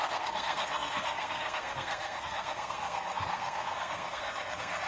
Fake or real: fake